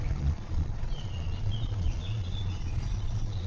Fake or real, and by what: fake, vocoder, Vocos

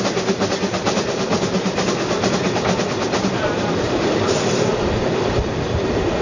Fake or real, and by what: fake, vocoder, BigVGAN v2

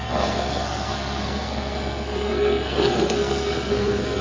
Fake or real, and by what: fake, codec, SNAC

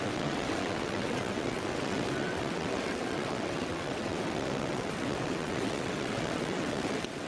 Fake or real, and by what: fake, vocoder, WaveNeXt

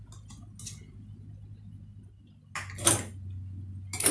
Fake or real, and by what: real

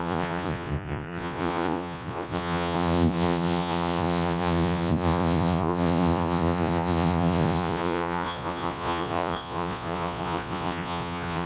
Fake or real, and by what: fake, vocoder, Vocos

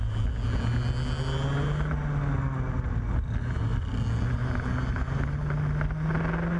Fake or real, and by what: real